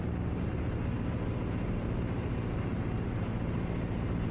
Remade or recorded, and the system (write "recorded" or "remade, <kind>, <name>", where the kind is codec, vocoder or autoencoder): recorded